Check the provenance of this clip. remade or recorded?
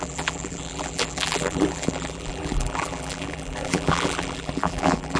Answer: remade